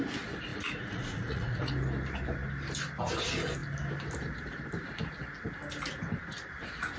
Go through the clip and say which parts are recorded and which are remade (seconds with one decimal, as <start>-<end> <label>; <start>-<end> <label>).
0.0-0.5 recorded; 0.5-1.7 remade; 1.7-7.0 recorded